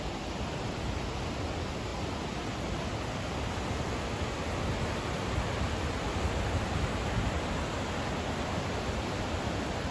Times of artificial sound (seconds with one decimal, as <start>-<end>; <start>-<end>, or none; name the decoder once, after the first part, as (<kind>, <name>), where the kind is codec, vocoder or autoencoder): none